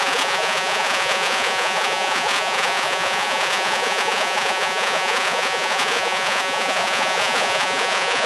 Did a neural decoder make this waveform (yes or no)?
yes